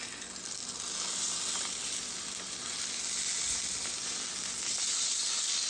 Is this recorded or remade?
recorded